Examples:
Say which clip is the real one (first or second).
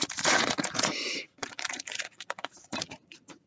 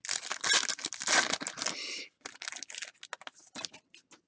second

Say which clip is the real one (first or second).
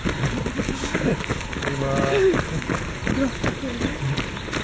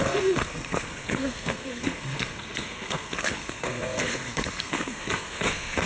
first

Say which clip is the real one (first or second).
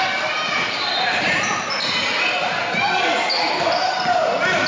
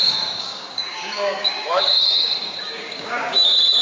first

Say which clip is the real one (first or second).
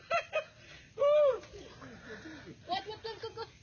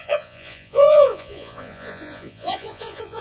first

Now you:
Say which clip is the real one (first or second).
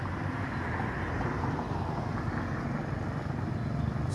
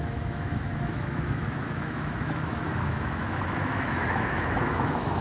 first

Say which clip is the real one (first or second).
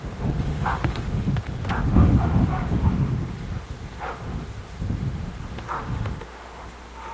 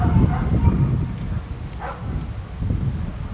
second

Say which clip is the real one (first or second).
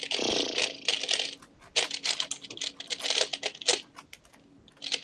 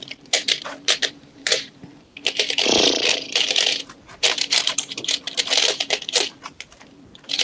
first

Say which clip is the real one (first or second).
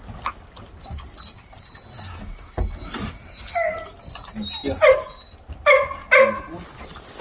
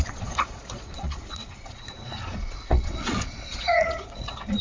first